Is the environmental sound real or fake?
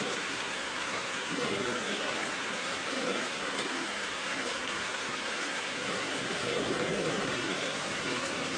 fake